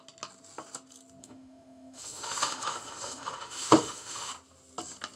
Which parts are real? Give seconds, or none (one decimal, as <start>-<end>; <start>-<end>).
0.0-1.2; 4.3-5.2